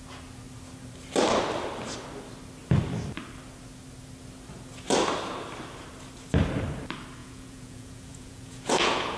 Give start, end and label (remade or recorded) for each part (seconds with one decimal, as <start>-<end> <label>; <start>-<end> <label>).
0.0-7.2 recorded; 7.2-9.2 remade